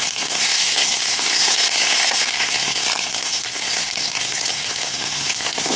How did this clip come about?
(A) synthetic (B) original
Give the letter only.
A